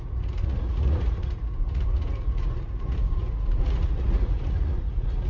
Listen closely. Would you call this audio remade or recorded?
remade